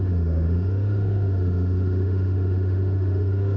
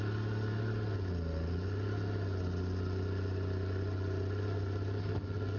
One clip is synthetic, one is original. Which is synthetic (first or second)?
first